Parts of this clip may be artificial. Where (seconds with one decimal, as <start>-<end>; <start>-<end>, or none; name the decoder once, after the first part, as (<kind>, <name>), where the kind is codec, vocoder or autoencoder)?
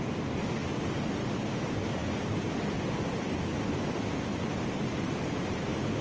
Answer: none